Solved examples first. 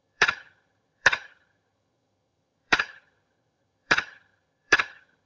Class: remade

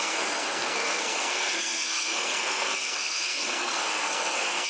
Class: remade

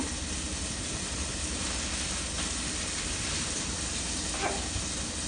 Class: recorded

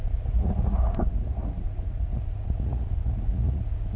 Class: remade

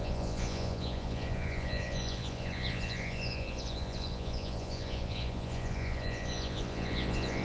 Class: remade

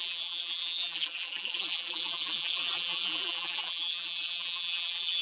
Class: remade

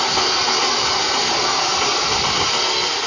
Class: recorded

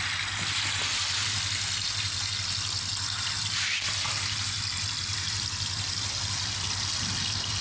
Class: recorded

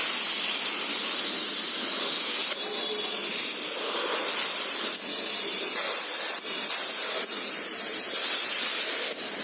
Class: recorded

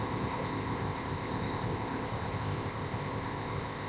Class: remade